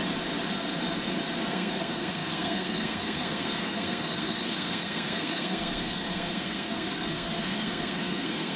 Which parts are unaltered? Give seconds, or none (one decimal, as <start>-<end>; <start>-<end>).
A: 0.0-1.5